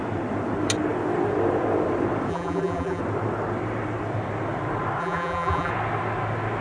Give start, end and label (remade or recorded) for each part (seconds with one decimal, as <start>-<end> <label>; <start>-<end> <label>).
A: 0.0-2.3 recorded; 2.3-3.0 remade; 3.0-5.0 recorded; 5.0-5.7 remade; 5.7-6.6 recorded